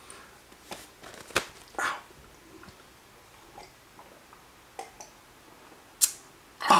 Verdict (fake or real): real